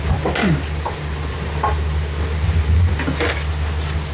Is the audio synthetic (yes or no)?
no